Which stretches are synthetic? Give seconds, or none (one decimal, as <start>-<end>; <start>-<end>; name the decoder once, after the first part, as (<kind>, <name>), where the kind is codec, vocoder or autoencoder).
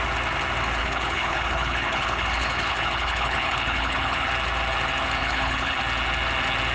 0.8-4.3 (codec, HILCodec); 5.2-5.8